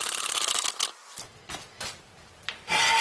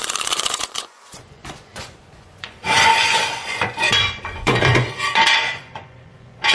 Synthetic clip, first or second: second